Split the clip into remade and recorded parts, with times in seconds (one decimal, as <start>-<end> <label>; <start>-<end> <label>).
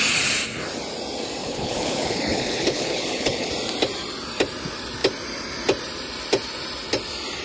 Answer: 0.0-1.4 recorded; 1.4-3.5 remade; 3.5-7.4 recorded